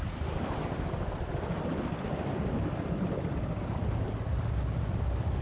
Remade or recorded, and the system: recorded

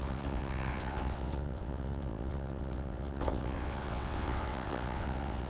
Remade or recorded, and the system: remade, vocoder, WaveNeXt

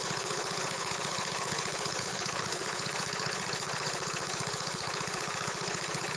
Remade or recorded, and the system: remade, codec, HILCodec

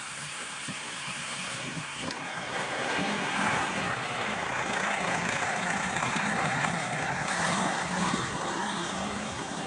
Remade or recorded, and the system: remade, codec, SNAC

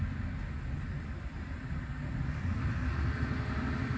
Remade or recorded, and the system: recorded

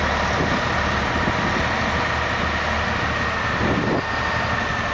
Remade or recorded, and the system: recorded